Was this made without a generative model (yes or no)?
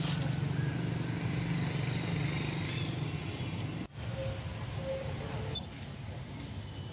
yes